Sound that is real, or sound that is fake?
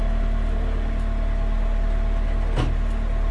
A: real